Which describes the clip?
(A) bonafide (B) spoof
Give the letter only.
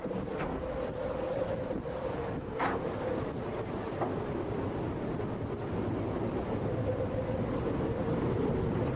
A